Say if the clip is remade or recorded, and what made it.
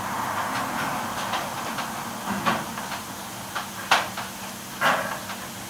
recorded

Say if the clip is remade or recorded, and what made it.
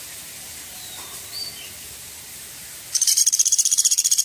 remade, vocoder, BigVGAN v2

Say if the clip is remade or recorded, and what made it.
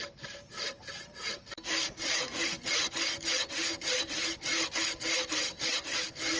remade, vocoder, BigVGAN v2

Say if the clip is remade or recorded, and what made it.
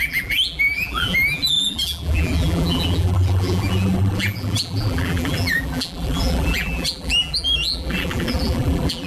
remade, vocoder, BigVGAN v2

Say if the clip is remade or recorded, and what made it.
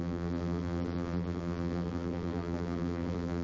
remade, vocoder, BigVGAN v2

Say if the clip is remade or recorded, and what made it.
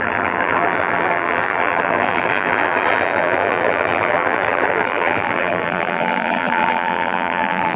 remade, vocoder, BigVGAN v2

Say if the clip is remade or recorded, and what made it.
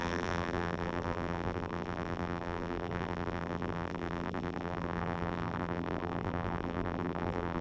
remade, vocoder, BigVGAN v2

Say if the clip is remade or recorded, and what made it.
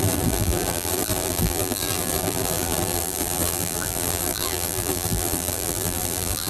remade, vocoder, BigVGAN v2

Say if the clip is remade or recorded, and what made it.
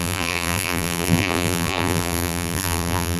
remade, vocoder, BigVGAN v2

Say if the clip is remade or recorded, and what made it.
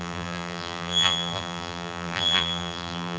remade, vocoder, BigVGAN v2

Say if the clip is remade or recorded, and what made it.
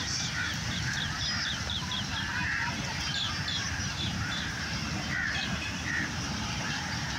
remade, vocoder, BigVGAN v2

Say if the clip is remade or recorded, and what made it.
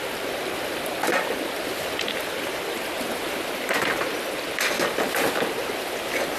remade, vocoder, BigVGAN v2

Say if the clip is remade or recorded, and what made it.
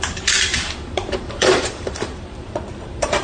remade, vocoder, BigVGAN v2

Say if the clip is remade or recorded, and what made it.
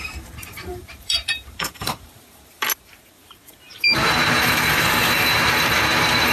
remade, vocoder, BigVGAN v2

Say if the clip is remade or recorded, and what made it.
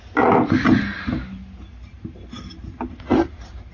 recorded